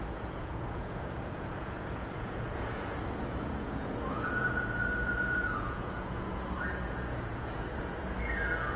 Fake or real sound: fake